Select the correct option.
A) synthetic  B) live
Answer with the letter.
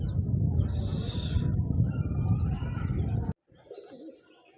B